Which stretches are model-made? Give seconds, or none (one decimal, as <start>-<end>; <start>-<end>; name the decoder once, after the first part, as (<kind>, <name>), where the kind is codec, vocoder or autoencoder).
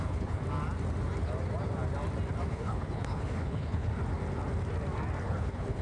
0.0-0.4 (codec, HILCodec); 2.5-3.9; 5.2-5.8